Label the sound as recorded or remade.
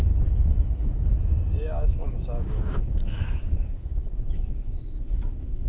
remade